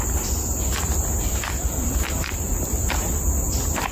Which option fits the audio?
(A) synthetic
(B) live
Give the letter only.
A